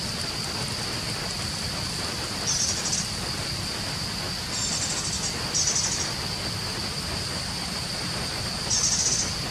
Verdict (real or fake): real